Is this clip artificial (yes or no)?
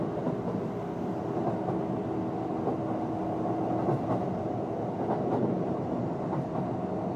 no